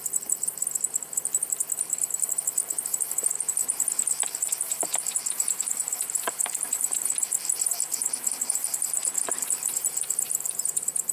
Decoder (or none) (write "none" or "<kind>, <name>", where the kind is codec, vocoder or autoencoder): vocoder, BigVGAN v2